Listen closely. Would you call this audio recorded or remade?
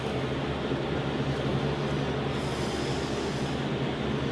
recorded